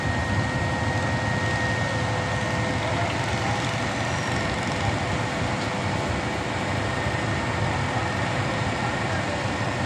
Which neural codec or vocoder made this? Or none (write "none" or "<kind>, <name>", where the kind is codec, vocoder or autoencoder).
none